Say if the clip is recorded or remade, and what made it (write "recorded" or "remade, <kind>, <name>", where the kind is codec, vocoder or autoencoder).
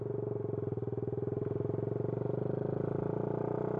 recorded